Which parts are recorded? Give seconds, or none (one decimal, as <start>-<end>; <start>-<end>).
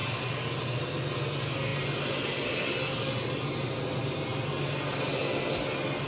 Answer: 0.6-6.1